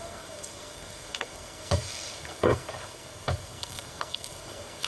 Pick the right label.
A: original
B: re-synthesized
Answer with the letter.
B